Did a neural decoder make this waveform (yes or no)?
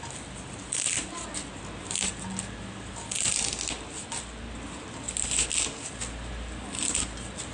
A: no